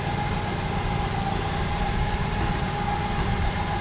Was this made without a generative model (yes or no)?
yes